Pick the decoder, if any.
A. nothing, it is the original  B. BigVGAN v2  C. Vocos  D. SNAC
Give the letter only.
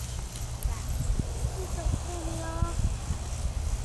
A